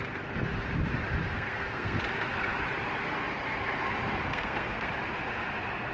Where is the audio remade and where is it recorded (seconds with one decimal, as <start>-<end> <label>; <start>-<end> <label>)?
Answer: 0.0-1.3 recorded; 1.3-2.0 remade; 2.0-4.3 recorded; 4.3-4.9 remade; 4.9-5.9 recorded